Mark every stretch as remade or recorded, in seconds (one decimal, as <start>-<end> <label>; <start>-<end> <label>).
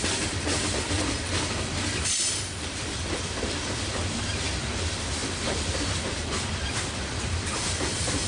0.0-3.9 remade; 3.9-4.6 recorded; 4.6-5.2 remade; 5.2-6.7 recorded; 6.7-8.3 remade